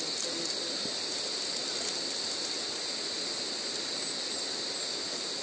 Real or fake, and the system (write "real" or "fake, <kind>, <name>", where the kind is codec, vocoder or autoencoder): real